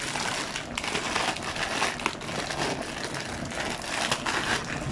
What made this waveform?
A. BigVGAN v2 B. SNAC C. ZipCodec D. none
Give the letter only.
D